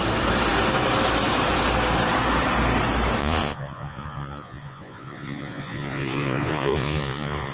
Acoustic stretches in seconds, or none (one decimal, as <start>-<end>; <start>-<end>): 0.0-3.2